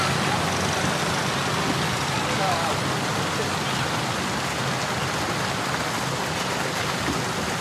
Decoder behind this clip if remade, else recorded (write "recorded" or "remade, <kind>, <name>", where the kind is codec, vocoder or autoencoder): recorded